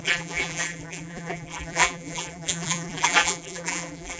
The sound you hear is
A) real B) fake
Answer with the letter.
B